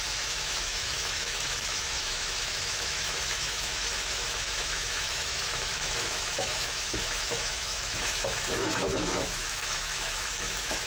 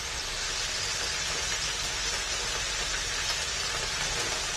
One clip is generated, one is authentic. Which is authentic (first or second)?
second